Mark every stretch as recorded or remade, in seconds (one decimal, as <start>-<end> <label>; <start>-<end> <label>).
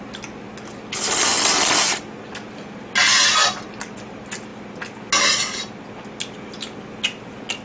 0.0-7.6 recorded